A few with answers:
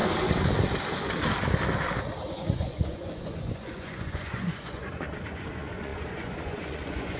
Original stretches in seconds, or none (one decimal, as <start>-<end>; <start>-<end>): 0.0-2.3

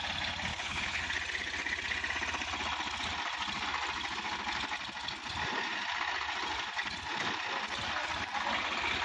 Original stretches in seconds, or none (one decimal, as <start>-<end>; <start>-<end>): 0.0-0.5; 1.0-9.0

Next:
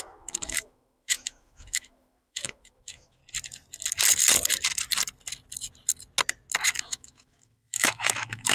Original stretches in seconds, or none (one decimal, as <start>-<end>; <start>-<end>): 3.2-6.8

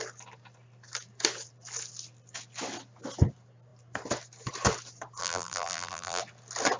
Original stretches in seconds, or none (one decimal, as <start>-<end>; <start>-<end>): 0.0-5.2; 6.2-6.8

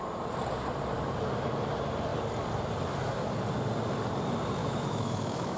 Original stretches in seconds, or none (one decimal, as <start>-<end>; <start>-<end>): 0.0-4.6

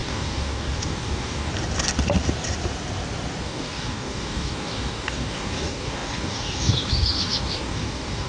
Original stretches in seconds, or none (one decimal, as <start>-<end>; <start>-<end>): 1.5-3.4